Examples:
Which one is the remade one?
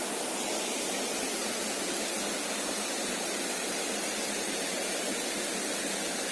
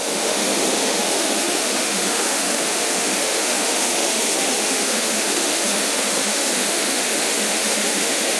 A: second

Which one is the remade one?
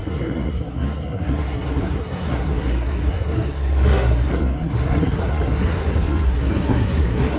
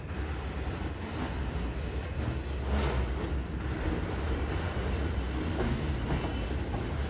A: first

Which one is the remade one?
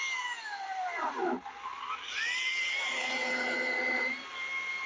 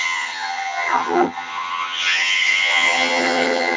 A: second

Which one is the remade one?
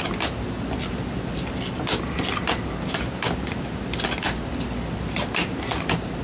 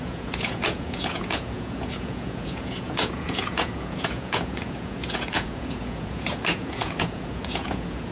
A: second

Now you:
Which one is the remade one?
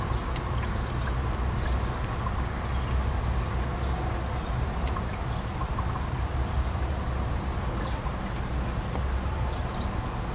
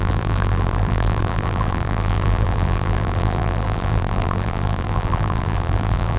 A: second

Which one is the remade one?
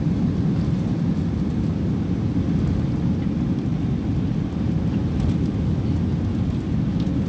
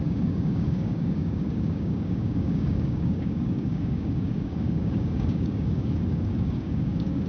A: second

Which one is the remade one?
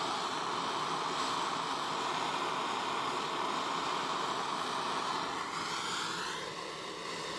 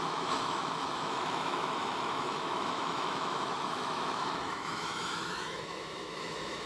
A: second